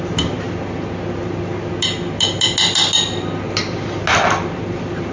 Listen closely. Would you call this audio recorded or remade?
recorded